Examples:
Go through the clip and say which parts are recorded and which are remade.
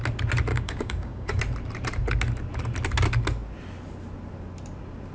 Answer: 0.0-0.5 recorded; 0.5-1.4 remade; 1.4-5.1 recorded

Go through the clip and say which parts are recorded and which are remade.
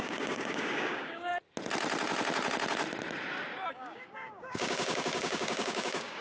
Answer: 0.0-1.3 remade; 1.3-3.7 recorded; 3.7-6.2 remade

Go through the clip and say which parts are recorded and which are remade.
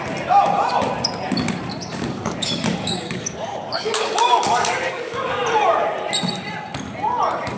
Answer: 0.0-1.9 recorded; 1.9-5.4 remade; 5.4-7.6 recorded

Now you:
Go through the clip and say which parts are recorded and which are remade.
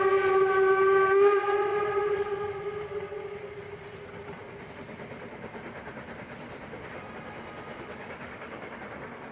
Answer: 0.0-7.7 recorded; 7.7-8.8 remade; 8.8-9.3 recorded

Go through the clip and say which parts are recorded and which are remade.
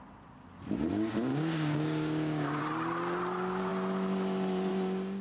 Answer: 0.0-1.3 recorded; 1.3-2.6 remade; 2.6-5.2 recorded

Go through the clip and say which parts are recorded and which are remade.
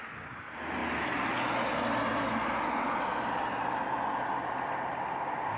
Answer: 0.0-5.6 recorded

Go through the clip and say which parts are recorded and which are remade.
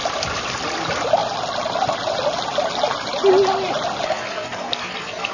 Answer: 0.0-5.3 recorded